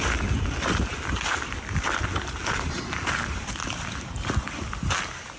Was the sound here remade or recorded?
recorded